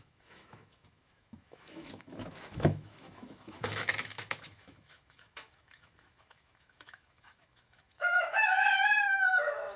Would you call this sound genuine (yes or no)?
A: no